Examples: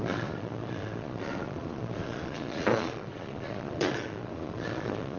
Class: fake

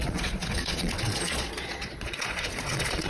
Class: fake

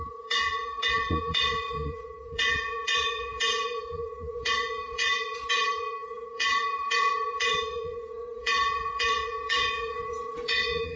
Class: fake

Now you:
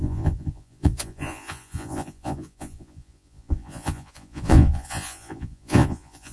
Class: fake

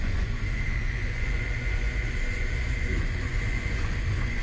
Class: fake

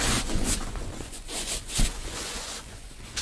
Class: fake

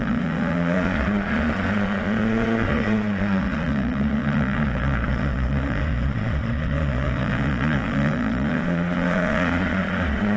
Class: fake